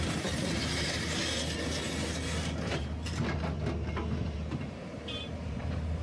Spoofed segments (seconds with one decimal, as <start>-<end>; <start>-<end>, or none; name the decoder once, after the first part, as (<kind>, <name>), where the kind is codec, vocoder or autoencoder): 0.0-1.2 (vocoder, BigVGAN v2); 4.2-6.0